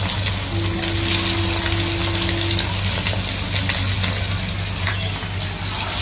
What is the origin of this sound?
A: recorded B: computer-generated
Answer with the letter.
A